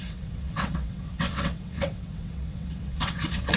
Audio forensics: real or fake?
fake